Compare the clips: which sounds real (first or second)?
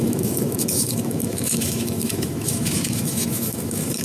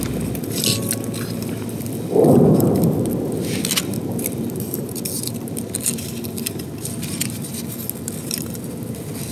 second